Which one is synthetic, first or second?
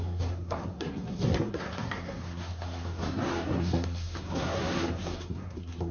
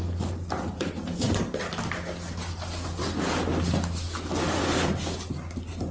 first